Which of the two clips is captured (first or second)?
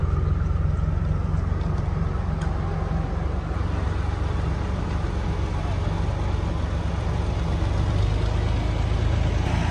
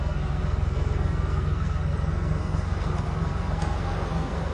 first